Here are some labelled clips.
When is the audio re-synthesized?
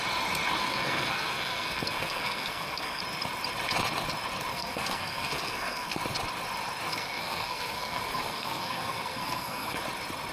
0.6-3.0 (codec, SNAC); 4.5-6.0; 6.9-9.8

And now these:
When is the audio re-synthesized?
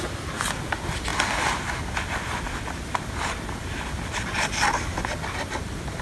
none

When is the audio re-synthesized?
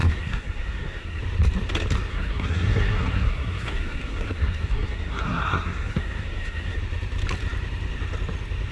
0.0-1.2 (codec, SNAC); 2.1-6.8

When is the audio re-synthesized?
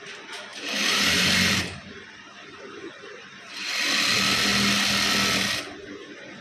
0.5-3.6 (vocoder, BigVGAN v2)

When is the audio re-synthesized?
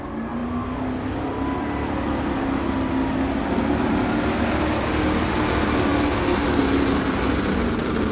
none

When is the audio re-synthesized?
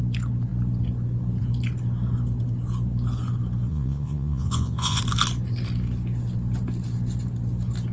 3.7-5.0 (vocoder, Vocos)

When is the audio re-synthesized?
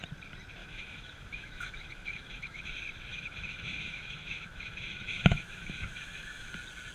0.6-2.7 (autoencoder, DAC-VAE); 3.1-6.5